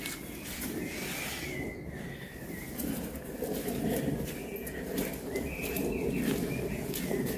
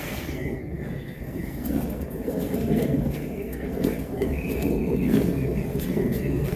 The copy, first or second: second